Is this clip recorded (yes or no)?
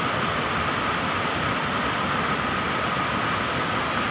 yes